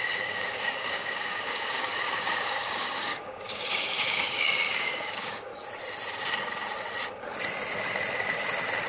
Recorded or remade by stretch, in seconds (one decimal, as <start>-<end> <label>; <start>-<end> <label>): 0.0-5.5 remade; 5.5-8.9 recorded